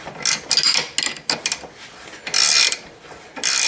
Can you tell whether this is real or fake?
real